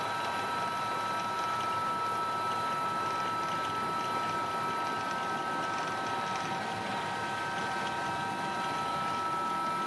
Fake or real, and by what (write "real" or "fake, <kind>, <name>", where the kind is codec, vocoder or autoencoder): real